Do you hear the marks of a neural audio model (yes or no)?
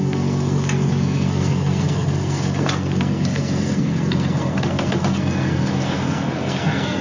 yes